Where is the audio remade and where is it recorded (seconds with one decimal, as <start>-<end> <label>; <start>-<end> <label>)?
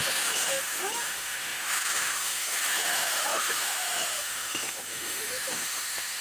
0.0-6.2 remade